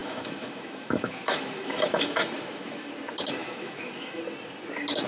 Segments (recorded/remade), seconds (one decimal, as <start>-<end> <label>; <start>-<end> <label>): 0.0-2.9 remade; 2.9-3.4 recorded; 3.4-4.2 remade; 4.2-5.1 recorded